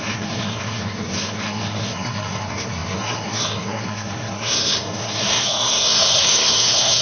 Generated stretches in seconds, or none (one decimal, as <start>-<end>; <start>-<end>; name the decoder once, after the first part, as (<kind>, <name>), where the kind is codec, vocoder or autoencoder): 0.0-7.0 (codec, SNAC)

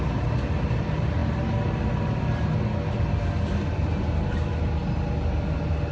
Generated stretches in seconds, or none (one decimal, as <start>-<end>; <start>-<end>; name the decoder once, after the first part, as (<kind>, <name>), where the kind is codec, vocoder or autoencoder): none

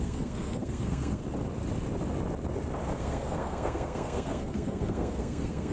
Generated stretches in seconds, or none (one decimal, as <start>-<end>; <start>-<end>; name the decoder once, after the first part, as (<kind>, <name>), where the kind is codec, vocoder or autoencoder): 0.0-1.2 (codec, SNAC); 3.0-5.7

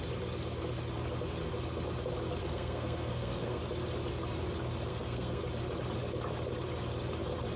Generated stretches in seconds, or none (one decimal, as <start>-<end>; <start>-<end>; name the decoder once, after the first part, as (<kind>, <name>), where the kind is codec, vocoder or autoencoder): 2.4-3.6 (codec, SNAC); 4.9-5.4

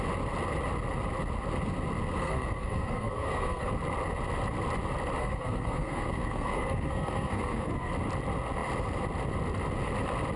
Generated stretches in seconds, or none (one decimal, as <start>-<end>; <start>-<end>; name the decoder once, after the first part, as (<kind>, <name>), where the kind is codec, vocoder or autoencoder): 2.2-3.7 (codec, SNAC); 5.2-7.9

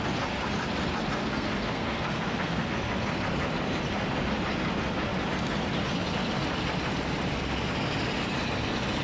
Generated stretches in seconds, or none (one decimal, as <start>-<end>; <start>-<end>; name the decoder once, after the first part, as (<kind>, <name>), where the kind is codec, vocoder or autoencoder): 1.2-2.7 (codec, SNAC)